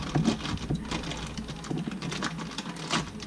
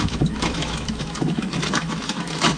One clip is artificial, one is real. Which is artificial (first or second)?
second